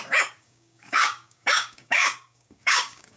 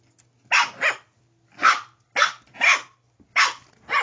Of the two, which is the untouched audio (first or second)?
second